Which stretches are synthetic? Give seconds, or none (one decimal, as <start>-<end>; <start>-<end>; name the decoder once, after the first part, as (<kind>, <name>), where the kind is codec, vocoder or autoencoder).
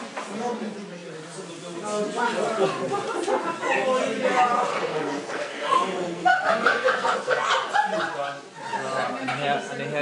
4.7-7.5 (codec, SNAC)